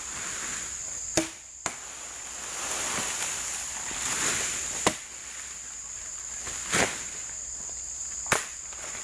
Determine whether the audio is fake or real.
real